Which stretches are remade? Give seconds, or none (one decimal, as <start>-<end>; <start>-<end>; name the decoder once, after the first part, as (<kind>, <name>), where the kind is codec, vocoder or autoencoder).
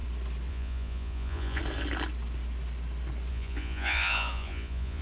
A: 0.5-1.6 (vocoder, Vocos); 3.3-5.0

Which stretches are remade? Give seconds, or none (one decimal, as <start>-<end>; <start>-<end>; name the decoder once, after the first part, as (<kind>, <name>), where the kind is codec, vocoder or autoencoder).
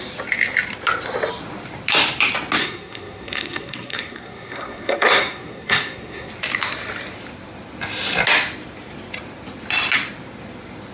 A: 2.6-6.3 (codec, SNAC)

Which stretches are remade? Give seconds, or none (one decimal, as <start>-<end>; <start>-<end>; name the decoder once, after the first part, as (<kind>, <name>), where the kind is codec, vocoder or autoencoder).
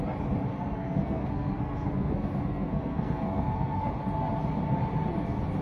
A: 0.5-3.9 (codec, SNAC)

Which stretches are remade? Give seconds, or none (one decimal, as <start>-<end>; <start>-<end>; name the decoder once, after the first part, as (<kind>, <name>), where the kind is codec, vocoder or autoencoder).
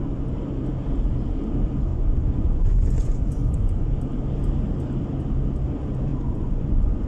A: 1.9-3.9 (vocoder, Vocos); 6.1-7.1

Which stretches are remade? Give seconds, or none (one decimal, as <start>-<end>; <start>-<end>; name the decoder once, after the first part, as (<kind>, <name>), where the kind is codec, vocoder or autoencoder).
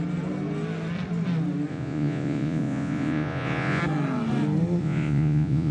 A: 1.7-3.8 (vocoder, Vocos); 4.8-5.7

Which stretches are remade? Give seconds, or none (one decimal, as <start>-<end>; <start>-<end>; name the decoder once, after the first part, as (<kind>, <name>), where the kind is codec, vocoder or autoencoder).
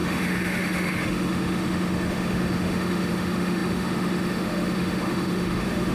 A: 0.0-5.9 (autoencoder, DAC-VAE)